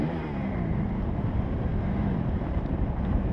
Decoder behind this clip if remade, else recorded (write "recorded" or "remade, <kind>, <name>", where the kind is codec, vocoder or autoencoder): remade, vocoder, BigVGAN v2